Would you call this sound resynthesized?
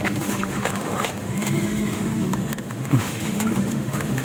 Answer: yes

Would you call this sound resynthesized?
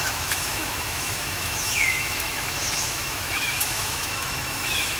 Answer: yes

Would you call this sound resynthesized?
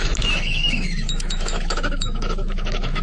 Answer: yes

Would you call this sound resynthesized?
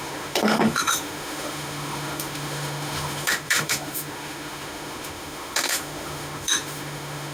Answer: yes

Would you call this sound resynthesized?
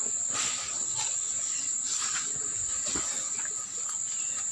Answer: no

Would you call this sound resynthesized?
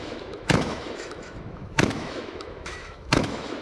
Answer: yes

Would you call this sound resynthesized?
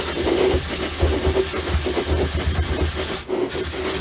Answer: no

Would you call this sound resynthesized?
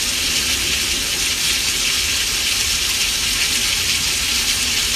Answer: no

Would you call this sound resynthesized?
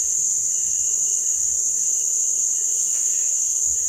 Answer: yes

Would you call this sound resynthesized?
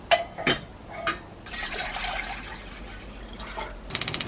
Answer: no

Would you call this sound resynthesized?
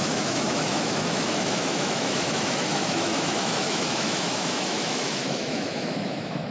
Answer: yes